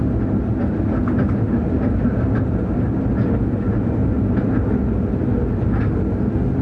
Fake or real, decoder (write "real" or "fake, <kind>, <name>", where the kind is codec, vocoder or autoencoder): real